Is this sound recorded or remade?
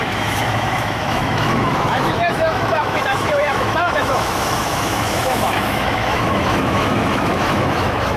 remade